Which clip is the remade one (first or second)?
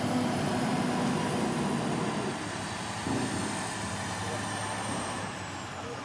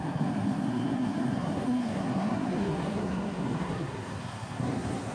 second